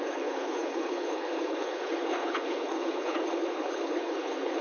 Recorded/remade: remade